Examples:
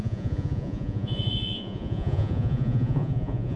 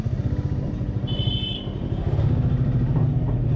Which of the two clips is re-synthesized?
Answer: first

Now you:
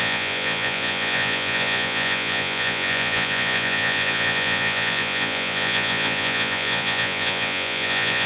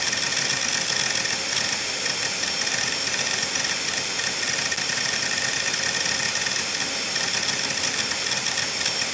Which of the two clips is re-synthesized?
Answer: first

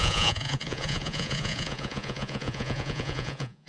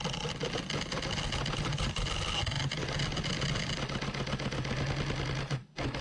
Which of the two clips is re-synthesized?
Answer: first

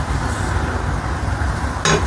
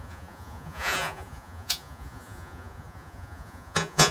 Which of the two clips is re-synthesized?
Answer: second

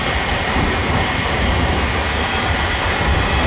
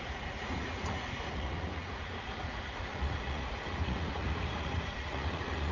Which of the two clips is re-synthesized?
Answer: second